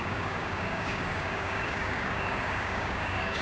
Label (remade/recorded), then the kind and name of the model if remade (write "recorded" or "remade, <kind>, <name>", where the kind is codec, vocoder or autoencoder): remade, codec, DAC